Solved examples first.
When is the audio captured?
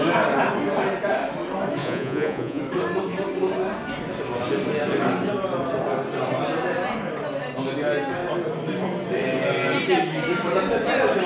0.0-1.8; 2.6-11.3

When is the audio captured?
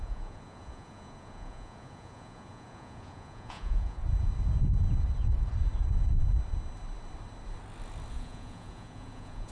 4.0-8.1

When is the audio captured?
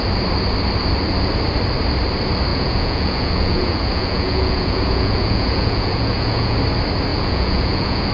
0.0-2.5; 6.6-7.1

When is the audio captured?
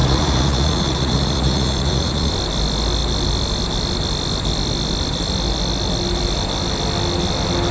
2.3-7.7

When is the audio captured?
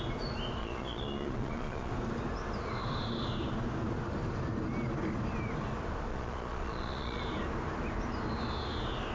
0.0-0.6; 1.9-6.1; 7.2-9.1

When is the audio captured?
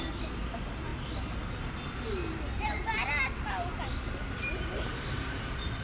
0.0-5.8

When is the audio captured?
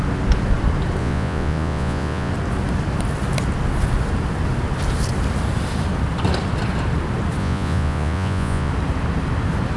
0.0-1.0; 2.3-7.4; 8.7-9.8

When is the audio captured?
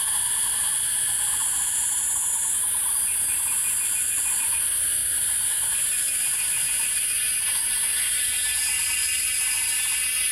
0.0-10.3